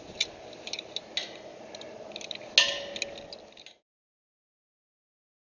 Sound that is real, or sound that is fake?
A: real